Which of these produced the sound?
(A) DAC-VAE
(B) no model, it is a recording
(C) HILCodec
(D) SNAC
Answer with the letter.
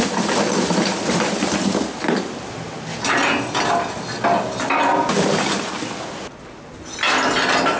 B